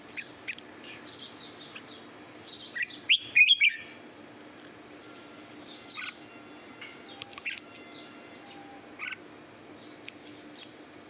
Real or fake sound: fake